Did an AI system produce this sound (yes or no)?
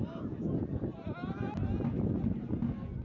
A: no